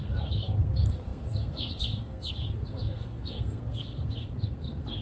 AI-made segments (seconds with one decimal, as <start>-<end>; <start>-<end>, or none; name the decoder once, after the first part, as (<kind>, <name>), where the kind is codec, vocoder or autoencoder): 0.0-5.0 (codec, SNAC)